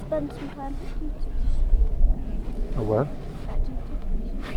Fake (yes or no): no